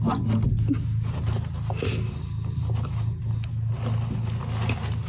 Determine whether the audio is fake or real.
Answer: real